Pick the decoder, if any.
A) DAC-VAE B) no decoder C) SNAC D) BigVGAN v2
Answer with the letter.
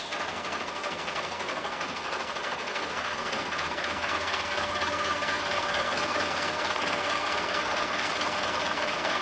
C